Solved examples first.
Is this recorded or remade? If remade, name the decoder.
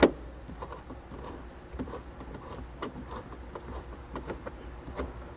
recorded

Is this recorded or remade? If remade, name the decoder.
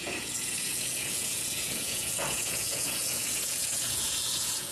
remade, vocoder, Vocos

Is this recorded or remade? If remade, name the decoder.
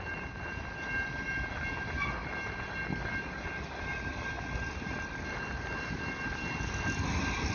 recorded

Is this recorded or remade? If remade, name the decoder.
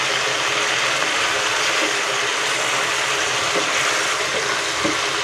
recorded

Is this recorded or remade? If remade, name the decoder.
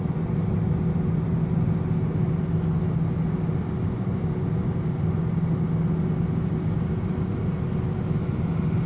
recorded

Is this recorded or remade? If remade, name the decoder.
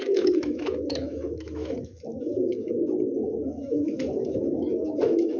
remade, autoencoder, DAC-VAE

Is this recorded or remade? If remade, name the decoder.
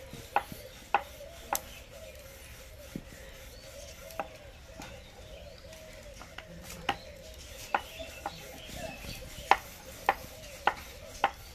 recorded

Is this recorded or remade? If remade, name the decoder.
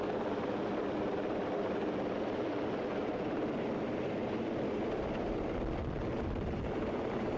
recorded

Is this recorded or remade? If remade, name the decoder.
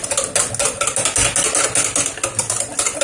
recorded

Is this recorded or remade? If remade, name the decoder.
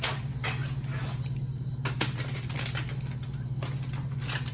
recorded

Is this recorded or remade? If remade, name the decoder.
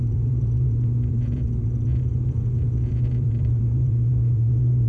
remade, vocoder, Vocos